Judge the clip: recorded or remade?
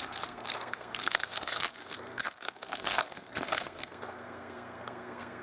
remade